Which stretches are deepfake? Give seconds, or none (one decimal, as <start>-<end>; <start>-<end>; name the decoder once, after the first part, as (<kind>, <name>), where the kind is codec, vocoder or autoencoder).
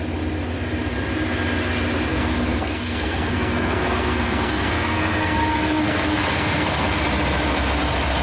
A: 2.1-7.0 (codec, SNAC)